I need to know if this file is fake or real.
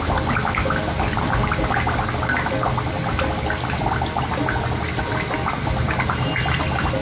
real